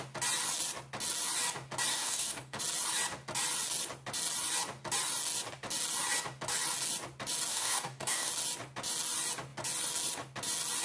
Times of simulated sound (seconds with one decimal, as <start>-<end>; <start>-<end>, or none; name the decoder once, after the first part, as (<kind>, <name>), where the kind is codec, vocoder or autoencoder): 1.9-2.6 (codec, DAC); 7.5-8.3